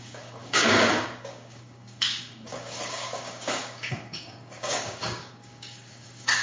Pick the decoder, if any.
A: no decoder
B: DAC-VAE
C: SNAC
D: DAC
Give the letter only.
D